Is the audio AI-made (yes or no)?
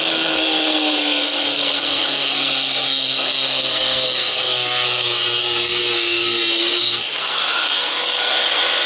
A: yes